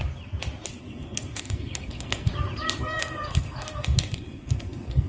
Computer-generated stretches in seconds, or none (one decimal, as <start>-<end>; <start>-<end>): 0.8-2.3; 2.8-5.1